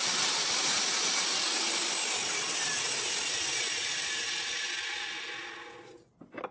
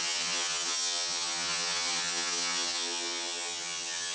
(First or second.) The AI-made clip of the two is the second